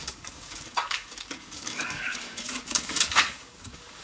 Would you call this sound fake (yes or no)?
yes